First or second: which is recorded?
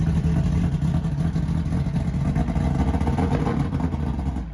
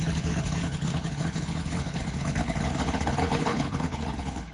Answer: first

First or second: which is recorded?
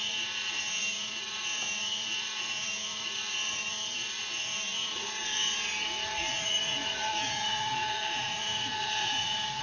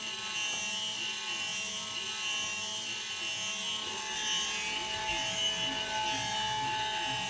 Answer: second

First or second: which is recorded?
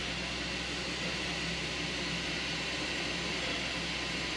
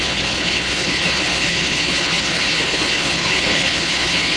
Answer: first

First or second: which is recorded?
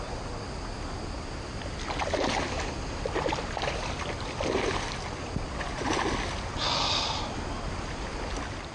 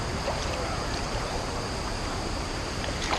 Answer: first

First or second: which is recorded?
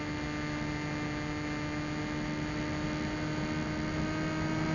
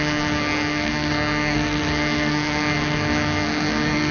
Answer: first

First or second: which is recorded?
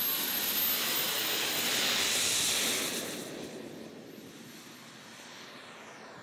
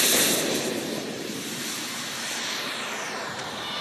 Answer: first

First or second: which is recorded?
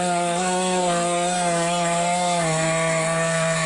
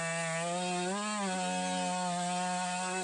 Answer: second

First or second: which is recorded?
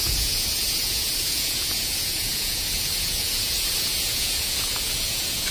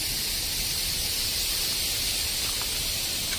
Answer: second